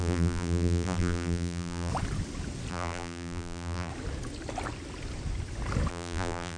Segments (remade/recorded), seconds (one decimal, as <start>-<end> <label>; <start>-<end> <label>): 0.0-1.9 remade; 1.9-2.7 recorded; 2.7-3.9 remade; 3.9-5.9 recorded; 5.9-6.6 remade